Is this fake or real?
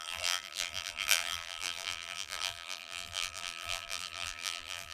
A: fake